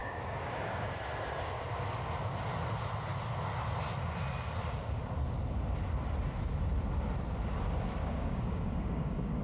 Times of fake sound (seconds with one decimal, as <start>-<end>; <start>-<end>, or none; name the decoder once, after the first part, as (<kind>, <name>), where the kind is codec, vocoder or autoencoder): 0.0-1.0 (codec, DAC); 8.0-9.4